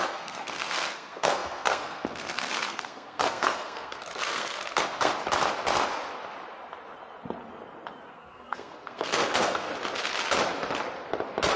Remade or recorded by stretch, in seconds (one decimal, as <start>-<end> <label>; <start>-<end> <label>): 0.0-5.1 remade; 5.1-8.1 recorded; 8.1-9.7 remade; 9.7-11.6 recorded